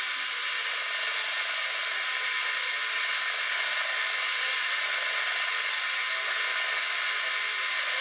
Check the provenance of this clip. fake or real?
real